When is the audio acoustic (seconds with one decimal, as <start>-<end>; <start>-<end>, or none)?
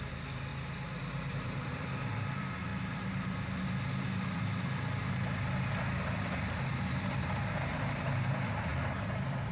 0.5-1.3; 2.7-6.6; 8.7-9.5